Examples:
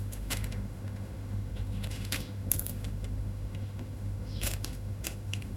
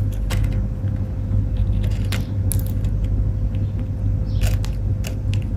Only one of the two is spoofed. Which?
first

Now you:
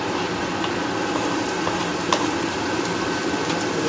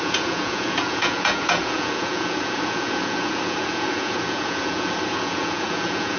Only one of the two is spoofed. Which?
second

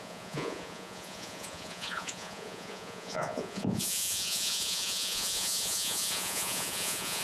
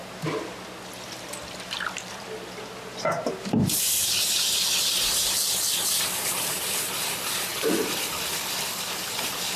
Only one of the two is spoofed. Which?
first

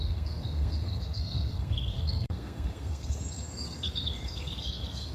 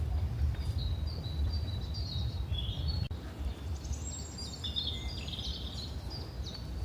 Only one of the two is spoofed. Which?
first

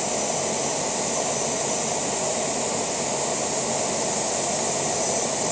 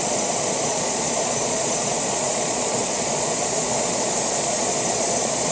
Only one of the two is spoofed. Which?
second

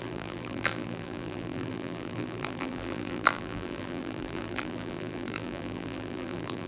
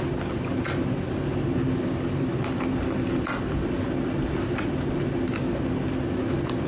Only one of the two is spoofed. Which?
first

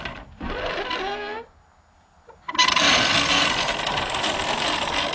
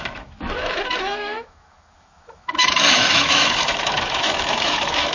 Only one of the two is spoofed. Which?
second